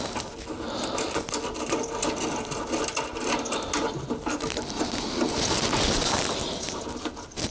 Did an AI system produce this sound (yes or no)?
no